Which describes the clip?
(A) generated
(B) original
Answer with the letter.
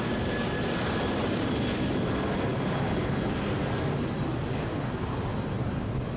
B